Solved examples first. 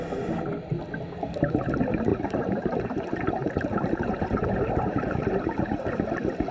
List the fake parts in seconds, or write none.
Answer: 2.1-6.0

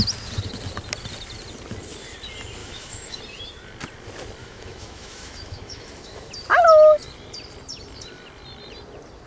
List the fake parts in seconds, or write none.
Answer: 2.6-3.2; 4.4-6.3

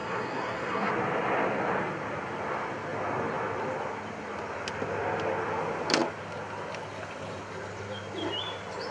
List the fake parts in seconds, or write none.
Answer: 0.0-0.9

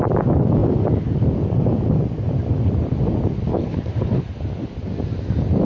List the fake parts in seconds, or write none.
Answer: 3.5-4.2

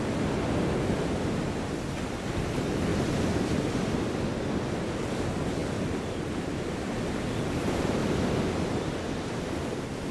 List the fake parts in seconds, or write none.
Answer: 2.9-4.0; 5.6-6.6; 8.0-9.1

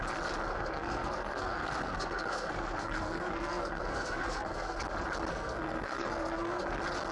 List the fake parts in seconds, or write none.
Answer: 0.5-4.8; 5.3-6.6

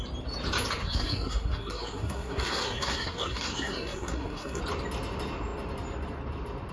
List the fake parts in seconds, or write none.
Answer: 0.8-4.6